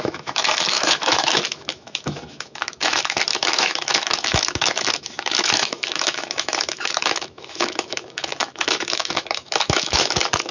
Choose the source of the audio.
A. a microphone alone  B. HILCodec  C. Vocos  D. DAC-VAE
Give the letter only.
D